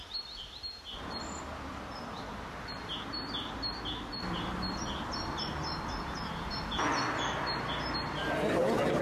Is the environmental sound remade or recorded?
recorded